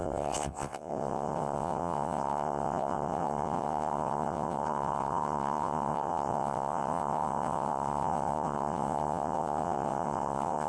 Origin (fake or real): fake